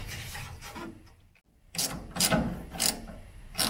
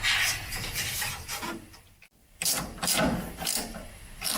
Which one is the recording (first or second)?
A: first